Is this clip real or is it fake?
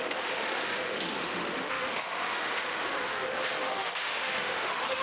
fake